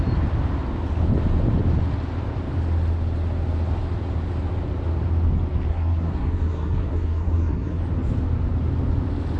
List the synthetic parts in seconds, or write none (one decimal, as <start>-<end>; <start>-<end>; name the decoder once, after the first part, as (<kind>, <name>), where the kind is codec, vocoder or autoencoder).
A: 5.7-7.8 (codec, SNAC)